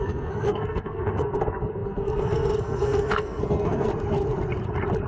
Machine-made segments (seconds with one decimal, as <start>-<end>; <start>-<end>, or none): 0.0-3.9

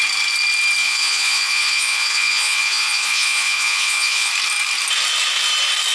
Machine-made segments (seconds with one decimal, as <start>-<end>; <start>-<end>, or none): 0.8-4.3

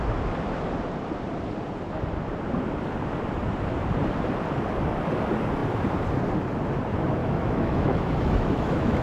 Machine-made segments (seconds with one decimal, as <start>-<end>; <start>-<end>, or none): 7.2-9.0

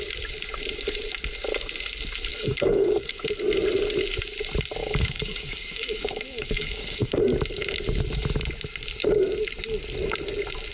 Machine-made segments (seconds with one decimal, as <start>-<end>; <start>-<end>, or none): 2.3-3.1; 4.8-7.2

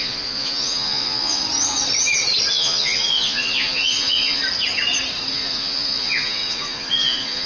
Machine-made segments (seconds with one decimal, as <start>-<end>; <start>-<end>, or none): 0.0-1.4; 2.5-4.4; 5.3-7.5

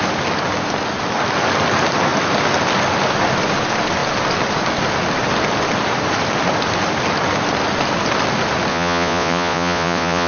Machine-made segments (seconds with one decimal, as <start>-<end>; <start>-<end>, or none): 8.7-10.3

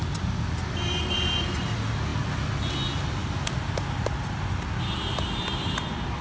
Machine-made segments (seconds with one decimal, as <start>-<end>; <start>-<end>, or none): 3.2-4.7